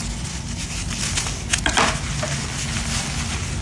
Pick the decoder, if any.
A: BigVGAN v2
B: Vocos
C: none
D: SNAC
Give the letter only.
C